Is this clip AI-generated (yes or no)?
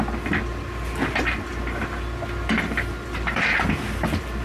no